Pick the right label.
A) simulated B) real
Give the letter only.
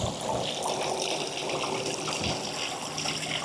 B